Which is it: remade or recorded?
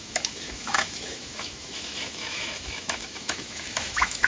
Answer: remade